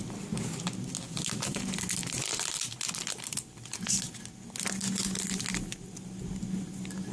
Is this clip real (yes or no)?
yes